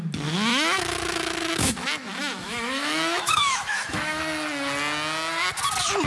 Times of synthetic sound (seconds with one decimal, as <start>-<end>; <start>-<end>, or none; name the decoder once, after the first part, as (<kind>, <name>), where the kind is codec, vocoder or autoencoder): 0.5-4.2 (autoencoder, DAC-VAE)